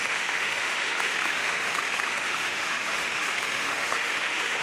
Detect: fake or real fake